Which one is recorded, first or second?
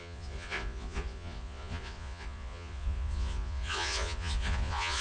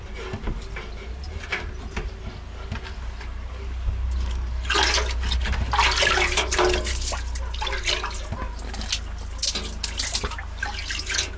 second